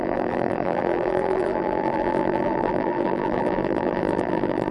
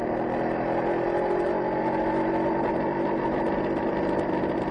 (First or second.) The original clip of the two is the second